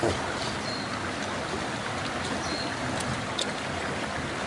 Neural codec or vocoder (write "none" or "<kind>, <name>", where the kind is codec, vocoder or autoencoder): none